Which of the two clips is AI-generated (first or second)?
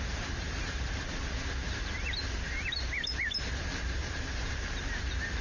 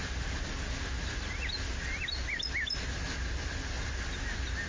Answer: first